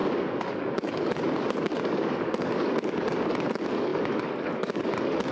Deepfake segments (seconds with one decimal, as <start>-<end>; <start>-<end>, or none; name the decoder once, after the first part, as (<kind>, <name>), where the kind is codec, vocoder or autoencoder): 0.0-5.3 (codec, DAC)